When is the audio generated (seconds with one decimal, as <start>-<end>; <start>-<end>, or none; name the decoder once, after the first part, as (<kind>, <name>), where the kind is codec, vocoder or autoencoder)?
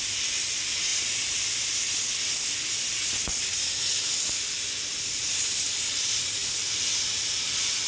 none